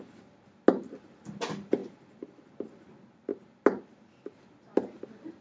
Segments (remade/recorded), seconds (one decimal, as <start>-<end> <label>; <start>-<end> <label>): 0.0-5.4 recorded